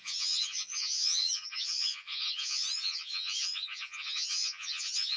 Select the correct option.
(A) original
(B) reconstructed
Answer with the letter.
B